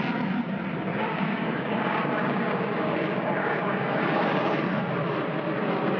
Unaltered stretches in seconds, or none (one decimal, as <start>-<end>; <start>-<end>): 0.0-0.9; 4.5-6.0